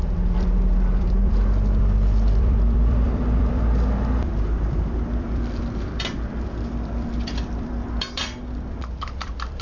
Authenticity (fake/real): fake